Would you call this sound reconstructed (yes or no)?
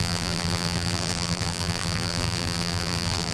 yes